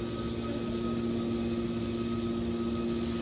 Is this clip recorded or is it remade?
recorded